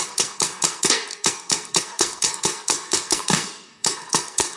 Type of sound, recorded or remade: remade